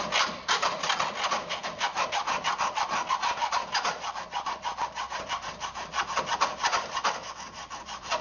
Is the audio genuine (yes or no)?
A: yes